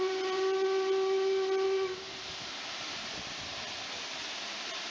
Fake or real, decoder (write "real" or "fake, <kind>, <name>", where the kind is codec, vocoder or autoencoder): real